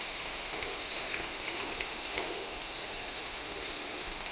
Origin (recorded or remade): remade